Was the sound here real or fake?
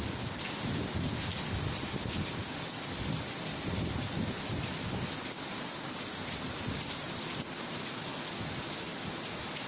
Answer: real